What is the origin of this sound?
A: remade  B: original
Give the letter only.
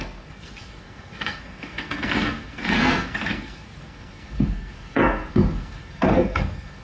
A